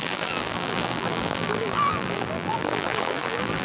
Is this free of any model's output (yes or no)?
no